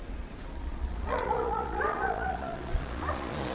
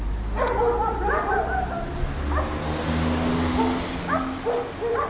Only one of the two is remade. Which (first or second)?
first